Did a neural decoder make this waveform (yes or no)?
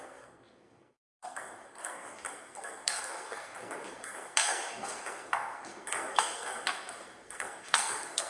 yes